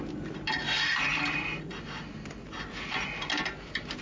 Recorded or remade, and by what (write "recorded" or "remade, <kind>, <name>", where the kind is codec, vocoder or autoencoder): recorded